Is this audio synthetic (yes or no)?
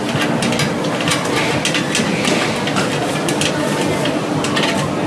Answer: no